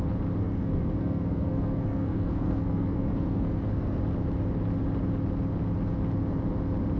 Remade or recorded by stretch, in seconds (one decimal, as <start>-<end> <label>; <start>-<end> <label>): 0.0-0.4 recorded; 0.4-4.0 remade; 4.0-7.0 recorded